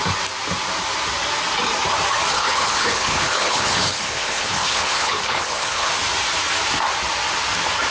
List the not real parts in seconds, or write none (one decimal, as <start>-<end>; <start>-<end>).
2.3-5.9